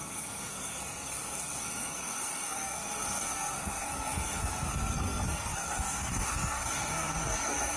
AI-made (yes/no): yes